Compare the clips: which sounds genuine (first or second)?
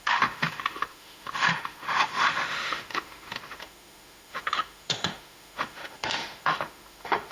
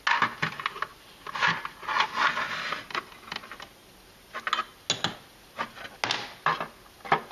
second